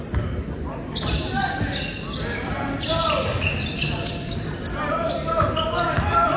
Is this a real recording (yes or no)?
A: no